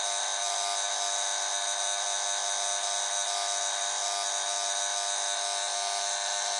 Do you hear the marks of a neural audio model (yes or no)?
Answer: no